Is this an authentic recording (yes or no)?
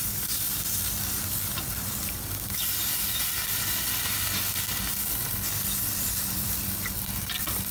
no